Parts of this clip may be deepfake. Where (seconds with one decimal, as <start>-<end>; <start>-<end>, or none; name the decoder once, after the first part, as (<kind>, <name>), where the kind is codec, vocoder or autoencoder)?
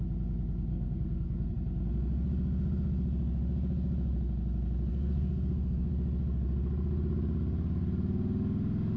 0.7-1.5 (codec, SNAC); 4.9-5.9